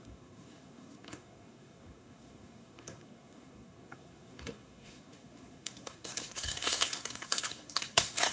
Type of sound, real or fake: fake